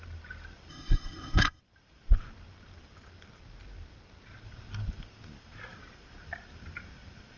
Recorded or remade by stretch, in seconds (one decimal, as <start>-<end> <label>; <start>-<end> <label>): 0.0-0.7 recorded; 0.7-1.6 remade; 1.6-7.4 recorded